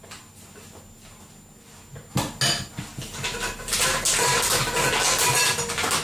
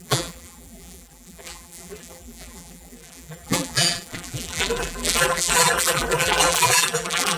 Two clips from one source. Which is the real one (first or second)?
first